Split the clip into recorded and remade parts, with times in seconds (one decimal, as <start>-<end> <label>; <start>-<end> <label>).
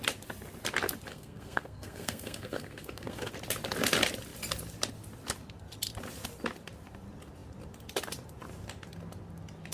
0.0-1.1 recorded; 1.1-3.3 remade; 3.3-9.7 recorded